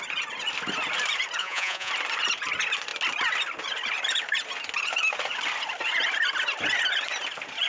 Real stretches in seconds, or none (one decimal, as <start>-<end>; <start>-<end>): 0.0-1.4; 1.9-7.7